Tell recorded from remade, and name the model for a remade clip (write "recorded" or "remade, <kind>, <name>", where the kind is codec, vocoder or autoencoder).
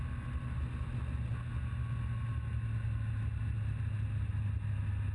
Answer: recorded